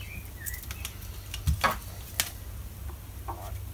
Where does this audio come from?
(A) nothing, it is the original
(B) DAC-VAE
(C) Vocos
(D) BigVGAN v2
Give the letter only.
A